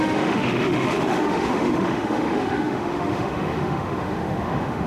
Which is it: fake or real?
fake